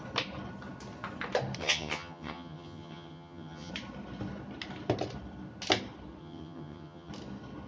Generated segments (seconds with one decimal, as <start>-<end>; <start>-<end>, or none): 1.6-3.7; 6.2-7.1